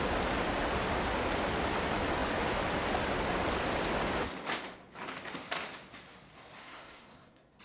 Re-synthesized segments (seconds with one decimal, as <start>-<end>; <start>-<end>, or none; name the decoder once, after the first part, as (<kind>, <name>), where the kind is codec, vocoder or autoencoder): 6.6-7.6 (codec, SNAC)